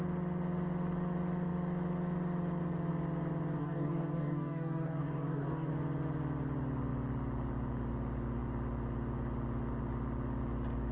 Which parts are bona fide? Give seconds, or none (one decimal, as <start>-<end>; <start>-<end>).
0.0-3.6; 5.7-10.9